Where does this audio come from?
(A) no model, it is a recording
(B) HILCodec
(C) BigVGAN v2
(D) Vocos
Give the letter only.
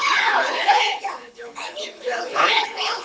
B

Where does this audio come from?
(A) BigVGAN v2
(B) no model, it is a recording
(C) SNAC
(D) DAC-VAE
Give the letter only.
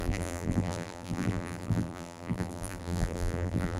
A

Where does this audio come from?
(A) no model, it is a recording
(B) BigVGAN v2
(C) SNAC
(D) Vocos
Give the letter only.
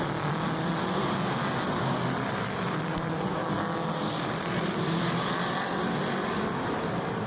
B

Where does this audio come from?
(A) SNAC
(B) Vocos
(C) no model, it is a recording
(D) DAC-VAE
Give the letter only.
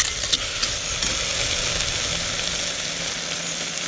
C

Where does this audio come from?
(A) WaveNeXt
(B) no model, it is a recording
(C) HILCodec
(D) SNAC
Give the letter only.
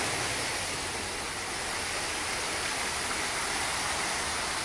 B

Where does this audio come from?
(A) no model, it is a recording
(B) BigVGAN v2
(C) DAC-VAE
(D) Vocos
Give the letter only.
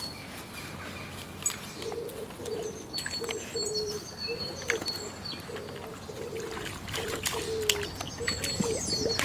A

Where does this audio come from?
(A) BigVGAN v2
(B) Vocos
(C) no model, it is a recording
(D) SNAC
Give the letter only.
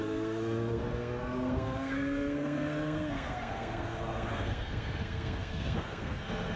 D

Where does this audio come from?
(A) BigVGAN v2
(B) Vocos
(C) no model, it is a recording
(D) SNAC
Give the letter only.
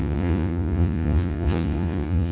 B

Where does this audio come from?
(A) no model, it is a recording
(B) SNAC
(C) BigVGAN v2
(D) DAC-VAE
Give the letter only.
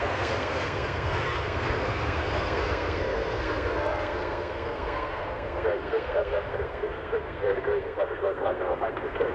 B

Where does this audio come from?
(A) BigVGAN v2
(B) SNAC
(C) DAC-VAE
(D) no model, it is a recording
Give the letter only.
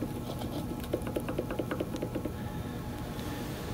D